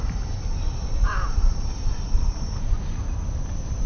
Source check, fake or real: real